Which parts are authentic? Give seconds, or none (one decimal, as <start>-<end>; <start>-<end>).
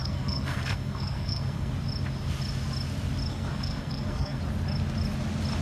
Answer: 1.7-3.3; 4.4-5.6